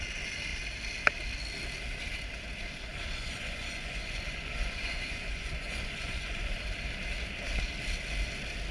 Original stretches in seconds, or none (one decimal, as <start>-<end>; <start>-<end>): 0.0-2.9; 6.5-8.7